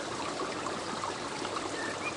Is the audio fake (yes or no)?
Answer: no